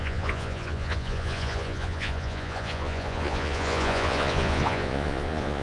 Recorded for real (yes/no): no